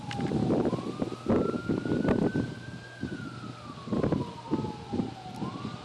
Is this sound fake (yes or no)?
no